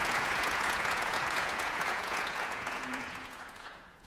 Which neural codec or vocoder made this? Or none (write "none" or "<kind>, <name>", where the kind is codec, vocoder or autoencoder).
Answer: vocoder, Vocos